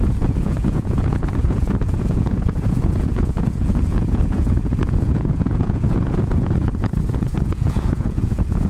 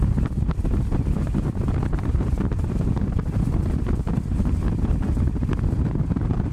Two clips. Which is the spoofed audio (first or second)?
first